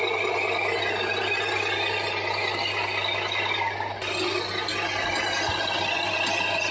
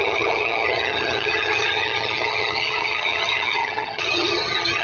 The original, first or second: first